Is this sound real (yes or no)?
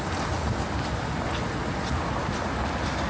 yes